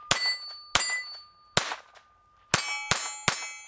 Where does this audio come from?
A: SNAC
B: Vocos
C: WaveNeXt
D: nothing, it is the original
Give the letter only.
D